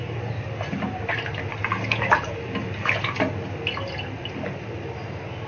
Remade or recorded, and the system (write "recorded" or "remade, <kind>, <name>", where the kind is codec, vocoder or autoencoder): recorded